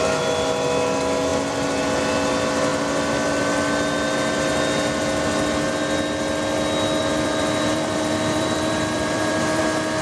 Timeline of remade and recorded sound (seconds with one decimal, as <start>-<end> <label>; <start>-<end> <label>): 0.0-1.3 recorded; 1.3-1.8 remade; 1.8-7.0 recorded; 7.0-9.6 remade; 9.6-10.0 recorded